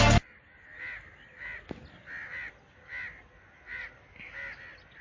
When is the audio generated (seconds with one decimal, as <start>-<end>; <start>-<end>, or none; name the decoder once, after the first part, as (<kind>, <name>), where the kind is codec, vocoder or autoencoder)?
none